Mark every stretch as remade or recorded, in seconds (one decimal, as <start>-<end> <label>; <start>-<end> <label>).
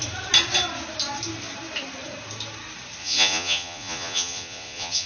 0.0-3.0 recorded; 3.0-5.1 remade